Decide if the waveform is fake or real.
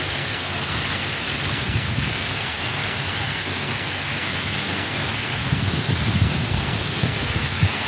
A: fake